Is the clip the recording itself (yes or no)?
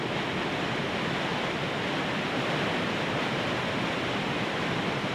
no